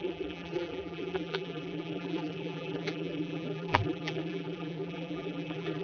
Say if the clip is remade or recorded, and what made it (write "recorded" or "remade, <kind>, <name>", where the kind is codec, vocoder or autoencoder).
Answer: remade, vocoder, BigVGAN v2